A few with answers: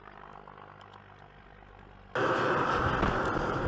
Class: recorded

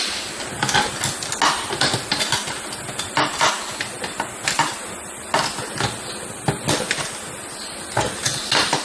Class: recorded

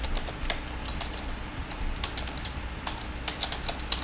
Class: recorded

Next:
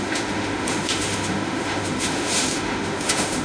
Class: remade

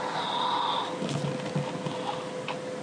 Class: recorded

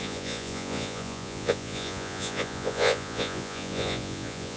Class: remade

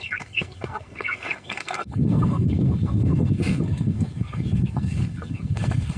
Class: remade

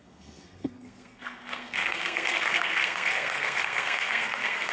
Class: remade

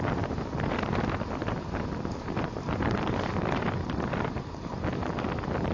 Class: recorded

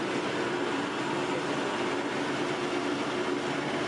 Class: recorded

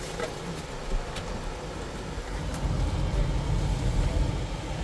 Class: recorded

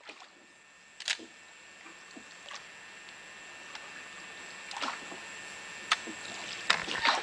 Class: recorded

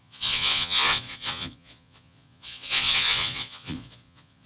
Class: remade